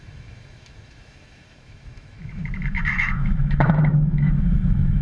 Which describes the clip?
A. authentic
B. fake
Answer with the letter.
B